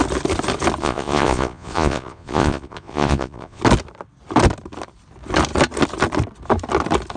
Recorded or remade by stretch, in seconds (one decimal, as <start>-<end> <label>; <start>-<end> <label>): 0.0-0.8 recorded; 0.8-3.6 remade; 3.6-7.2 recorded